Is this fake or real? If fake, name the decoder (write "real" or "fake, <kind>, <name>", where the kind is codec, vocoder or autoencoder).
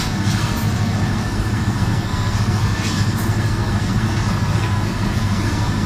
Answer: fake, codec, SNAC